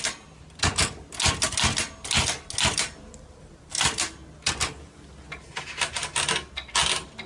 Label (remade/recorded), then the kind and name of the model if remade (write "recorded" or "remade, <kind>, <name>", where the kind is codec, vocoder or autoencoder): recorded